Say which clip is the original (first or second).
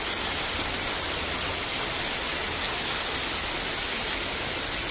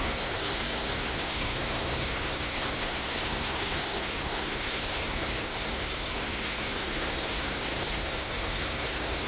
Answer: first